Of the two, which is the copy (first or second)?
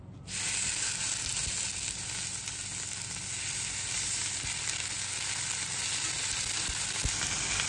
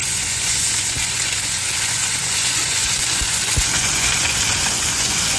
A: second